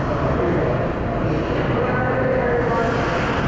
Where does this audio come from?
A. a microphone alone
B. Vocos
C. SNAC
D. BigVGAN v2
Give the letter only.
A